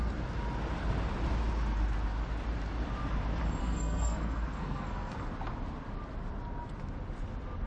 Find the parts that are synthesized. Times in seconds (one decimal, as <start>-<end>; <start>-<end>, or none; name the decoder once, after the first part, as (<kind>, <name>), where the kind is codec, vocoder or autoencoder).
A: 3.6-5.3 (codec, SNAC)